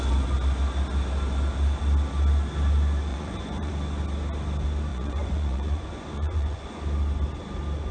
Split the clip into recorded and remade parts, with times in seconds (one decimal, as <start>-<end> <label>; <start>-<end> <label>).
0.0-3.1 recorded; 3.1-3.7 remade; 3.7-4.9 recorded; 4.9-6.8 remade; 6.8-7.9 recorded